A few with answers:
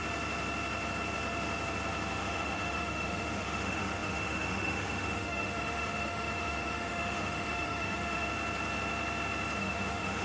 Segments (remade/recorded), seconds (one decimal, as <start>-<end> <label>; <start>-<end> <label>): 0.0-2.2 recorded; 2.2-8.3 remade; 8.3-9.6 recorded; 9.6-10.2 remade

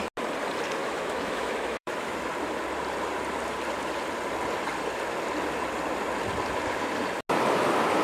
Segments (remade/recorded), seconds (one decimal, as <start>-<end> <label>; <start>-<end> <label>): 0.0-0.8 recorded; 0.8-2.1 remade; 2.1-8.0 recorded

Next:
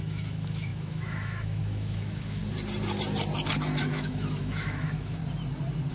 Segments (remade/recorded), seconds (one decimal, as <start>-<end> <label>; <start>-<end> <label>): 0.0-2.4 remade; 2.4-3.8 recorded; 3.8-5.2 remade; 5.2-5.9 recorded

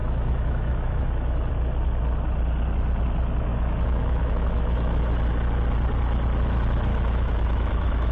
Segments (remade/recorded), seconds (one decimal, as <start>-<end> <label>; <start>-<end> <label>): 0.0-1.5 remade; 1.5-3.5 recorded; 3.5-5.0 remade; 5.0-6.9 recorded; 6.9-8.1 remade